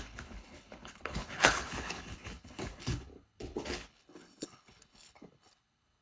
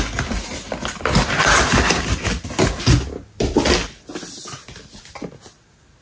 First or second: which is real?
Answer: second